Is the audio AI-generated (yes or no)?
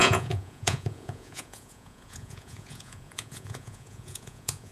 yes